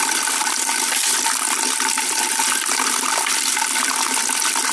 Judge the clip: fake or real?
real